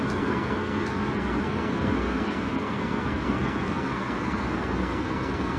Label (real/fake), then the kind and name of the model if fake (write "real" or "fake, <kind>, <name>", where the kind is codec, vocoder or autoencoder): fake, codec, SNAC